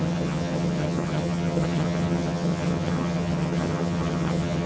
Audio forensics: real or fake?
fake